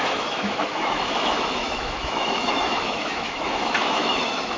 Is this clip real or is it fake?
fake